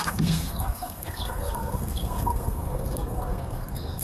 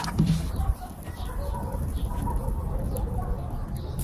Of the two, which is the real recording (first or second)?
second